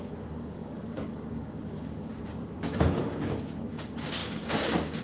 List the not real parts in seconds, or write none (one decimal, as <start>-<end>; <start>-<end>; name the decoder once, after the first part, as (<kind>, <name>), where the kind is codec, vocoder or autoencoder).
0.0-5.0 (codec, DAC)